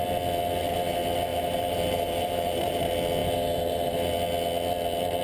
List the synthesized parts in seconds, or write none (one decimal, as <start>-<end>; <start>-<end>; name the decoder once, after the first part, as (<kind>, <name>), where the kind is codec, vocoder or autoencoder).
1.3-2.8 (vocoder, BigVGAN v2); 3.2-4.1